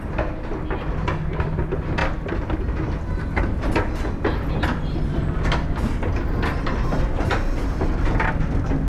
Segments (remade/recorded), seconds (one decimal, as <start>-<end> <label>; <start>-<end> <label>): 0.0-8.9 recorded